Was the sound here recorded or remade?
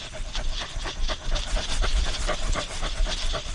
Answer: recorded